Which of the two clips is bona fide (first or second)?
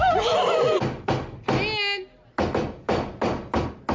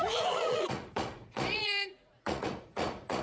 first